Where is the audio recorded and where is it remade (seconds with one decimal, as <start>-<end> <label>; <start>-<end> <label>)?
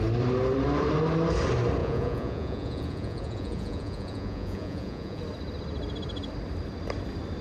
0.0-1.8 recorded; 1.8-5.2 remade; 5.2-7.4 recorded